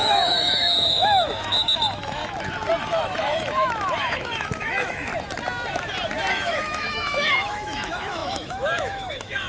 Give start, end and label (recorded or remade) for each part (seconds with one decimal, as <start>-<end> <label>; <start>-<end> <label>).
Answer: 0.0-2.2 remade; 2.2-2.8 recorded; 2.8-5.1 remade; 5.1-6.3 recorded; 6.3-9.5 remade